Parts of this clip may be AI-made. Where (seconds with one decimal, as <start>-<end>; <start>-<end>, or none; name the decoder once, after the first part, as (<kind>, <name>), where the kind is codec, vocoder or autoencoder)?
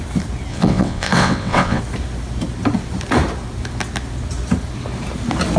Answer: 0.5-1.8 (vocoder, WaveNeXt)